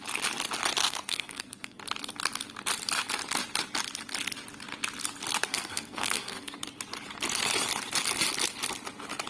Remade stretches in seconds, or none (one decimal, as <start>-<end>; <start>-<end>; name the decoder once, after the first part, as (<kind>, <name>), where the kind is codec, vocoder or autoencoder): 0.8-1.8 (codec, SNAC); 5.4-6.6